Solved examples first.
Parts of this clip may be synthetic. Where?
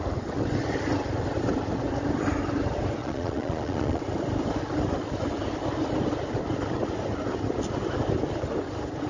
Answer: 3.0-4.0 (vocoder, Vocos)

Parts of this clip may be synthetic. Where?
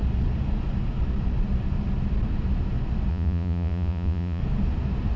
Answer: 3.1-4.4 (vocoder, Vocos)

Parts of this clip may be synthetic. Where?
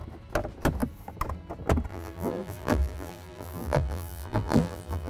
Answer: 1.9-5.1 (vocoder, BigVGAN v2)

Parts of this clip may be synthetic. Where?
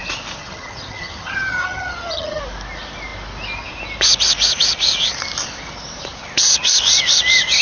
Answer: 0.4-2.4 (vocoder, HiFi-GAN)